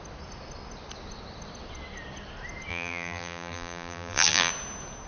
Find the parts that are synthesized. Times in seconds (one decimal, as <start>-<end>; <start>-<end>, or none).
2.7-4.5